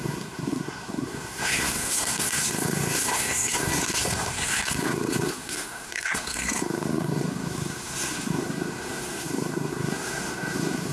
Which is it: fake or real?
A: fake